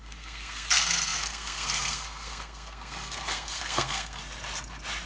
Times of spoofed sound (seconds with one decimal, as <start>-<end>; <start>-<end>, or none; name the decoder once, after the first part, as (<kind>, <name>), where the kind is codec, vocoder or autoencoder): 0.0-4.2 (codec, SNAC)

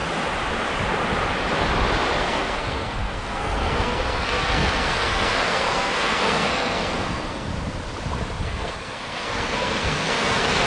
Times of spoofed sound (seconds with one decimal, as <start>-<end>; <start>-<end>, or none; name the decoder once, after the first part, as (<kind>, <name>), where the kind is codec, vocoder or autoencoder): 2.1-7.5 (codec, SNAC); 8.4-10.7

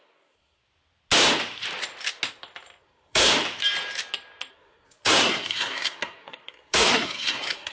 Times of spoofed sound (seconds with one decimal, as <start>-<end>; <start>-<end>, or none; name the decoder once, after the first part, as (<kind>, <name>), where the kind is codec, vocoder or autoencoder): 0.0-0.6 (codec, SNAC); 2.8-3.3; 4.5-7.7

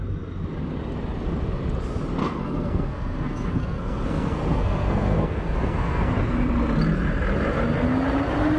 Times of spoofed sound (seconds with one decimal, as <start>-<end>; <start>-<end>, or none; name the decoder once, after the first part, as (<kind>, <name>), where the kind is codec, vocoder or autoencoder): 2.2-6.1 (codec, SNAC)